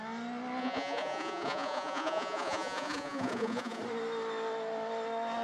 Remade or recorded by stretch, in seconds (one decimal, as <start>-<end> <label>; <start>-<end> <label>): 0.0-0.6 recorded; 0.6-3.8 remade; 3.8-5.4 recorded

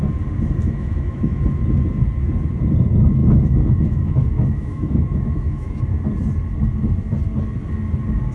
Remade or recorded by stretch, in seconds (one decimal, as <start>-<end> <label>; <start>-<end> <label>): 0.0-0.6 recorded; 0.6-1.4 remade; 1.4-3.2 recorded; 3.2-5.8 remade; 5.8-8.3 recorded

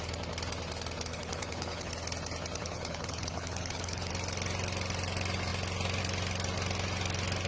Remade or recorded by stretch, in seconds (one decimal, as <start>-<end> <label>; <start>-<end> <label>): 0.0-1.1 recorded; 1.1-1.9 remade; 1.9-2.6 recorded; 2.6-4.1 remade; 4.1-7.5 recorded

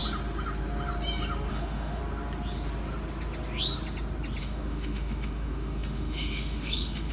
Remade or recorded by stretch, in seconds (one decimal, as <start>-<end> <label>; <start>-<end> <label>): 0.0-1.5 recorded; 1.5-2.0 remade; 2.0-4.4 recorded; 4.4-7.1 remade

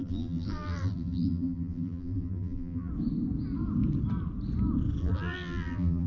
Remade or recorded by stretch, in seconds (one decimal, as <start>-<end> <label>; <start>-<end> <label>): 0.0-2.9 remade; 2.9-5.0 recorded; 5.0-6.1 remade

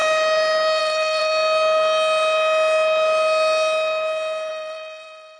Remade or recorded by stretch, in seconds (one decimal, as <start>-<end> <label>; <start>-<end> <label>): 0.0-0.8 recorded; 0.8-1.3 remade; 1.3-4.5 recorded; 4.5-5.4 remade

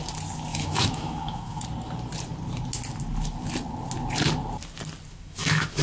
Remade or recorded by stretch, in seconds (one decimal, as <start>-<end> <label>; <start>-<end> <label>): 0.0-0.5 recorded; 0.5-1.6 remade; 1.6-5.1 recorded; 5.1-5.8 remade